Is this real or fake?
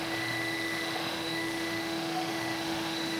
fake